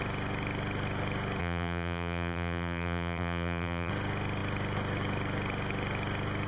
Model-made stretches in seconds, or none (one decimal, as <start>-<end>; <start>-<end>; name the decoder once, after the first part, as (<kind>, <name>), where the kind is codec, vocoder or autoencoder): 1.4-3.9 (vocoder, BigVGAN v2)